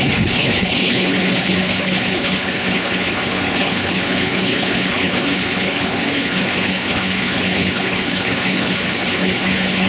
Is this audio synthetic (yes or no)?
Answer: yes